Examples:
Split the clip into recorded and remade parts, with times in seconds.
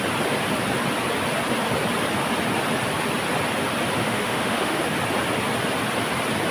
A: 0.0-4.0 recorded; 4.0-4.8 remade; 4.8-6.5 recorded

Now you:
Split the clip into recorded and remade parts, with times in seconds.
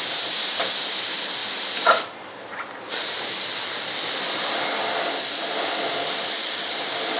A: 0.0-7.2 recorded